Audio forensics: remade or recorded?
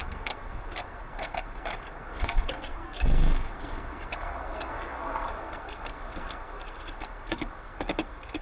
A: remade